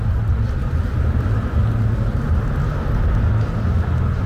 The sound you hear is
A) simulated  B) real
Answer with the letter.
B